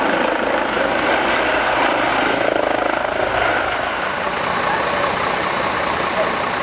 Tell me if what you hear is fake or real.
fake